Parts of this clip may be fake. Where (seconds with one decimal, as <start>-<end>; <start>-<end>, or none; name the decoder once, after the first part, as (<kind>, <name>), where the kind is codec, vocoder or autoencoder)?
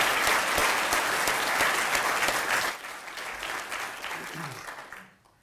none